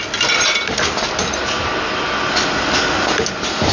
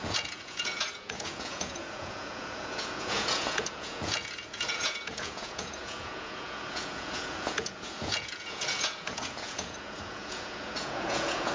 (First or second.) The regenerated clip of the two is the second